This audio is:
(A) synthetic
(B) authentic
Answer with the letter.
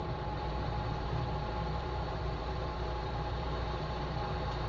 A